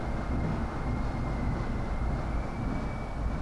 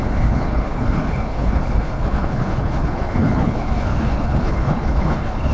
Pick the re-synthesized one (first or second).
second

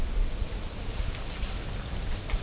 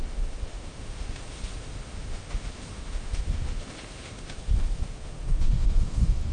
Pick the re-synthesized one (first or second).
second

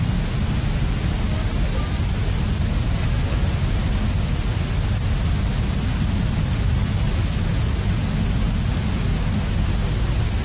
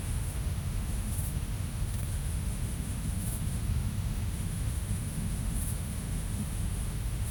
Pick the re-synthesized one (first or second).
second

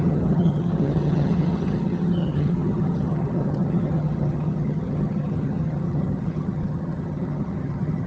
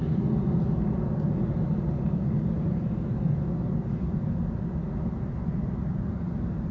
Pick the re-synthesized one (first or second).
first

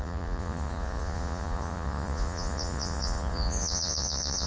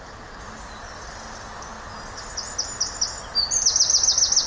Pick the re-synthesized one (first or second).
first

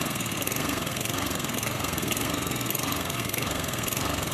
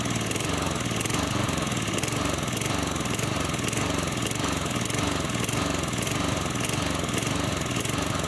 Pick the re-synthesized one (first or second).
first